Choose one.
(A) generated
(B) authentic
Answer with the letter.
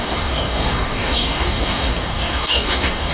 A